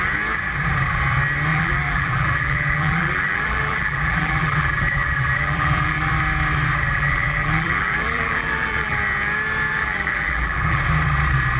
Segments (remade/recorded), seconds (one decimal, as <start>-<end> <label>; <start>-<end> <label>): 0.0-1.5 recorded; 1.5-6.1 remade; 6.1-6.9 recorded; 6.9-9.0 remade; 9.0-9.7 recorded; 9.7-10.8 remade; 10.8-11.6 recorded